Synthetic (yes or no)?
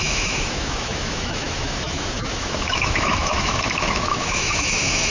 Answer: yes